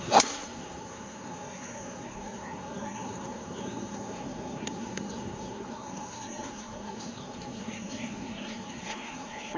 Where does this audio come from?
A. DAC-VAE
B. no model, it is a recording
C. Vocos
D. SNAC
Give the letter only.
D